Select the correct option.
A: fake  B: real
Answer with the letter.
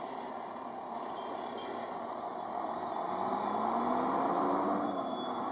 B